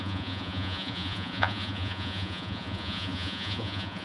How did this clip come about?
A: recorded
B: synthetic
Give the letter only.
B